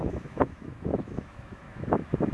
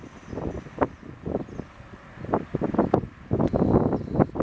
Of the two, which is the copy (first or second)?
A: first